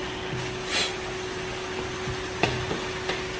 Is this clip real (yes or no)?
yes